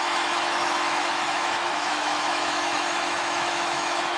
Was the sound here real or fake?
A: fake